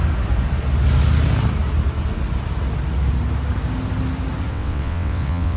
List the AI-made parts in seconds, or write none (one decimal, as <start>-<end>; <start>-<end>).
4.5-5.6